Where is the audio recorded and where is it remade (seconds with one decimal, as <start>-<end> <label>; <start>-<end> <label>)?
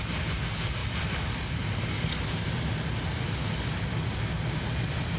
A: 0.0-5.2 recorded